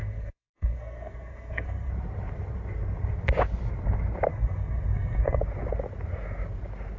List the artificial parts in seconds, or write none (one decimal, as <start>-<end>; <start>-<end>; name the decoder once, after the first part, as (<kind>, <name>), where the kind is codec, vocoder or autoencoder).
0.0-1.9 (codec, SNAC); 4.3-5.4